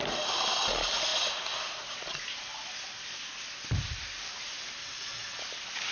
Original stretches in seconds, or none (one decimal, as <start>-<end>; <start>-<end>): 0.0-4.8; 5.4-5.9